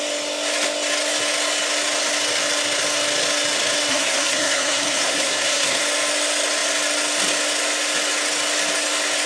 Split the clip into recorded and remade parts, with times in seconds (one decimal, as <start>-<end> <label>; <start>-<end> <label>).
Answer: 0.0-3.9 recorded; 3.9-5.8 remade; 5.8-9.3 recorded